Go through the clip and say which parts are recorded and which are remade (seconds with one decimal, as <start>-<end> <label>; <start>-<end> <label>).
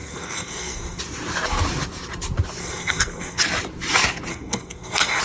0.0-1.0 remade; 1.0-2.6 recorded; 2.6-3.4 remade; 3.4-4.3 recorded; 4.3-5.2 remade